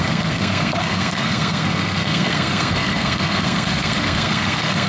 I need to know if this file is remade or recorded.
remade